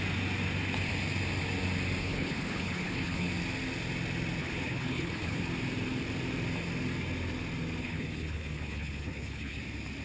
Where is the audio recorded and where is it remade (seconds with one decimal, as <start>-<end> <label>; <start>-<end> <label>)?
0.0-2.0 recorded; 2.0-3.3 remade; 3.3-4.4 recorded; 4.4-5.4 remade; 5.4-7.8 recorded; 7.8-9.6 remade; 9.6-10.0 recorded